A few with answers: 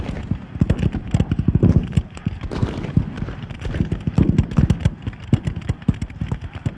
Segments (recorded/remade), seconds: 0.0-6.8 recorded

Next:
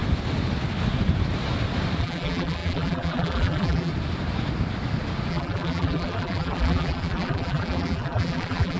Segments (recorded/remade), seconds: 0.0-2.0 recorded; 2.0-3.9 remade; 3.9-5.3 recorded; 5.3-8.8 remade

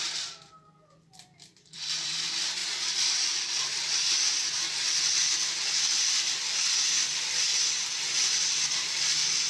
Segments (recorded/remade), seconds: 0.0-2.6 remade; 2.6-5.1 recorded; 5.1-9.5 remade

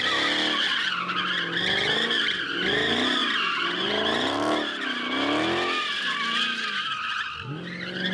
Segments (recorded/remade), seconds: 0.0-8.1 recorded

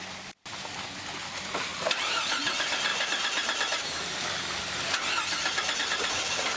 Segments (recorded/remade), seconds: 0.0-1.7 recorded; 1.7-2.3 remade; 2.3-2.9 recorded; 2.9-6.1 remade; 6.1-6.6 recorded

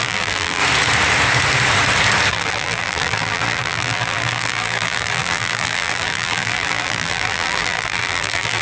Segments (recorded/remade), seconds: 0.0-0.6 remade; 0.6-2.3 recorded; 2.3-8.6 remade

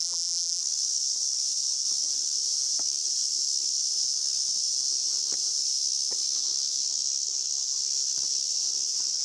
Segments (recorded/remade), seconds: 0.0-0.6 remade; 0.6-9.2 recorded

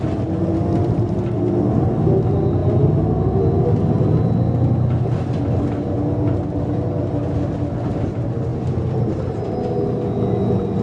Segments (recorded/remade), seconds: 0.0-8.5 recorded; 8.5-9.5 remade; 9.5-10.8 recorded